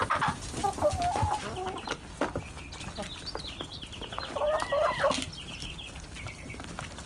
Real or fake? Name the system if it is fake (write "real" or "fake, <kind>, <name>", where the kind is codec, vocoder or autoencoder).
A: real